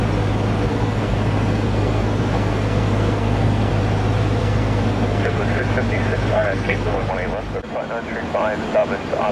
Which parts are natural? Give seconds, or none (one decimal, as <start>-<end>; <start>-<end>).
0.0-0.7; 3.7-4.4; 5.4-6.3; 7.1-9.3